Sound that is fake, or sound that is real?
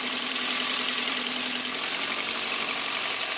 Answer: fake